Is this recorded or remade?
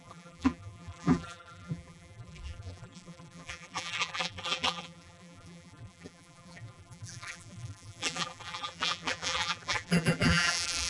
remade